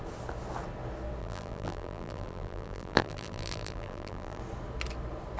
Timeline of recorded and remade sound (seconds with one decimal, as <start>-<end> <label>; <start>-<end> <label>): 0.0-1.2 recorded; 1.2-4.4 remade; 4.4-5.4 recorded